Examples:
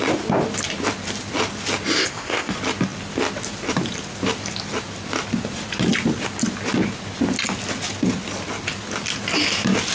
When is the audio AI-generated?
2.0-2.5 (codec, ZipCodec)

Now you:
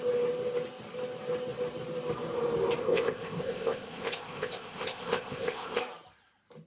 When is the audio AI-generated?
2.8-5.8 (codec, ZipCodec)